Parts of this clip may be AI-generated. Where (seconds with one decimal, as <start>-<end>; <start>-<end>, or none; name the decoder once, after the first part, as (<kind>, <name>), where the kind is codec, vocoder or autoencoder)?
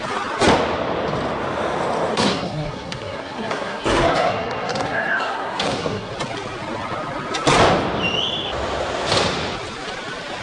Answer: 2.1-6.1 (codec, SNAC)